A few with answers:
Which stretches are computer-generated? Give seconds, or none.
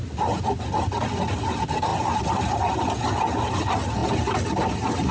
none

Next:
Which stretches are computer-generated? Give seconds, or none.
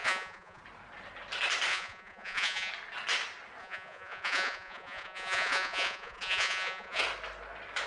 0.0-0.6; 1.7-2.7; 3.6-7.0